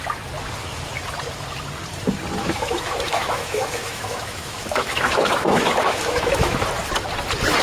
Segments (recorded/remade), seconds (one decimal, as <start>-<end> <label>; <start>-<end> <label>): 0.0-2.4 recorded; 2.4-6.6 remade; 6.6-7.6 recorded